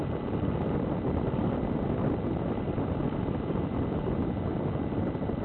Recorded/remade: remade